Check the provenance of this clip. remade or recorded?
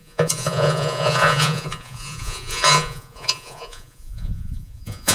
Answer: remade